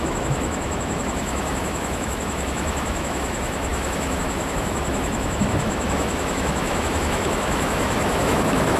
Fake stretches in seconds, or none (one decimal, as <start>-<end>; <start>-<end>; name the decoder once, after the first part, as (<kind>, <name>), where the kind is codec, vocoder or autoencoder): 0.0-8.8 (autoencoder, DAC-VAE)